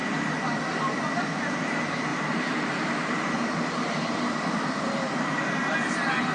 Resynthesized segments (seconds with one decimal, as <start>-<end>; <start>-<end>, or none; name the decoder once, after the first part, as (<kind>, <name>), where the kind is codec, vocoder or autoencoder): 2.1-5.5 (vocoder, BigVGAN v2)